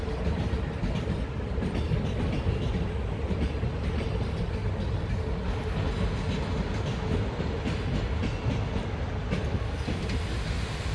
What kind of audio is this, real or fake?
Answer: real